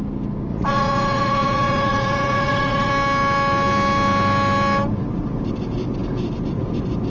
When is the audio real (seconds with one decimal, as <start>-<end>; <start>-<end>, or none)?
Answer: 0.0-0.5; 2.9-7.1